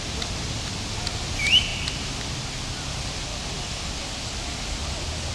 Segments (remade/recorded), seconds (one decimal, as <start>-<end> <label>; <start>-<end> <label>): 0.0-5.3 recorded

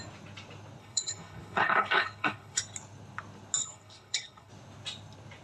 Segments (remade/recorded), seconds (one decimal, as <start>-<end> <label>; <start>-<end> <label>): 0.0-0.8 recorded; 0.8-2.6 remade; 2.6-3.6 recorded; 3.6-4.5 remade; 4.5-5.4 recorded